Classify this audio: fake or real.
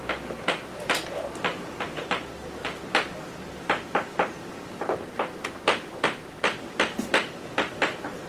real